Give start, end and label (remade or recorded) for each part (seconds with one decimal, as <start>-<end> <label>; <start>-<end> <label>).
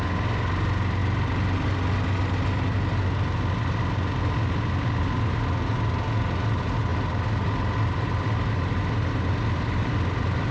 0.0-10.5 recorded